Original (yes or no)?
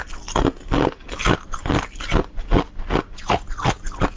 yes